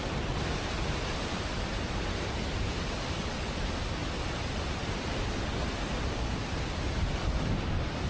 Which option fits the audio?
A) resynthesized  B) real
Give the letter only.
B